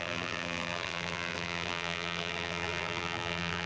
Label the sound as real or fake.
fake